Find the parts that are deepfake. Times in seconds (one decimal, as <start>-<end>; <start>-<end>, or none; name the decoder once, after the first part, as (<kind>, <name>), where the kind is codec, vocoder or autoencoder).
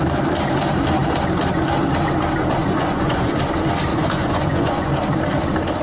2.6-3.4 (vocoder, Vocos); 3.9-4.9